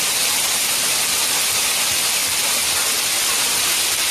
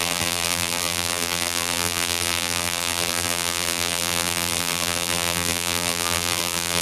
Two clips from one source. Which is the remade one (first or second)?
second